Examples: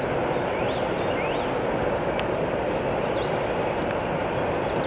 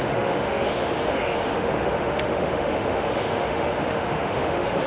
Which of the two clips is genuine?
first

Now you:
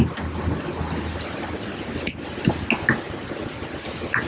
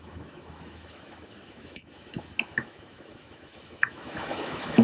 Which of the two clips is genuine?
first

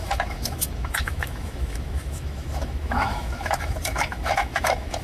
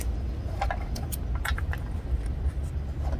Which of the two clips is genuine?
second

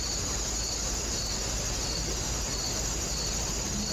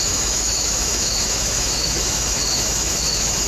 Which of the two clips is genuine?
first